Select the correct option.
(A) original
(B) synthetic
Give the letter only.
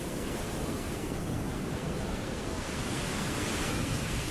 B